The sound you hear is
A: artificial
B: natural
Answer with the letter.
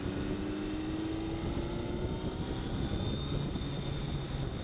B